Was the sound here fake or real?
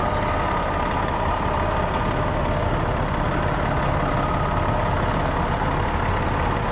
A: real